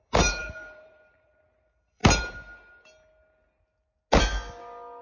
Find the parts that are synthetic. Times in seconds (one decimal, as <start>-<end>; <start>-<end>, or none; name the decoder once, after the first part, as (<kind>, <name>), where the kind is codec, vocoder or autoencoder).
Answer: 0.0-2.0 (vocoder, BigVGAN v2)